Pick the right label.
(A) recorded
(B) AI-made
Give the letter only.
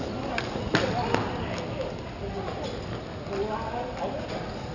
A